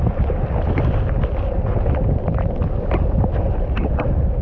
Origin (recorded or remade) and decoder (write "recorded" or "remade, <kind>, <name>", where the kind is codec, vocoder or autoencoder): recorded